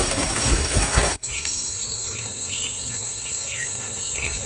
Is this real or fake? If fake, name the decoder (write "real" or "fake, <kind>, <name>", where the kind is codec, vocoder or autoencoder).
fake, codec, SNAC